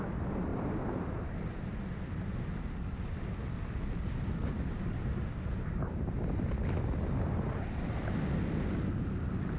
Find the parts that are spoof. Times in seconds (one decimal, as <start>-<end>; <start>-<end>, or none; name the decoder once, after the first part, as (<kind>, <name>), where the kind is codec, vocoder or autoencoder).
0.5-1.3 (vocoder, BigVGAN v2)